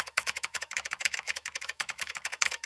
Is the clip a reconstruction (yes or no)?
yes